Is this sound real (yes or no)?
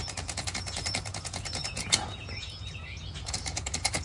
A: no